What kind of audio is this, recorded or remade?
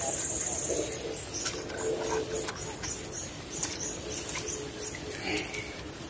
recorded